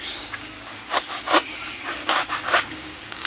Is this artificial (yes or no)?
yes